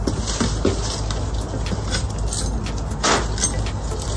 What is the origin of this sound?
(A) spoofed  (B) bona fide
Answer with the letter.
B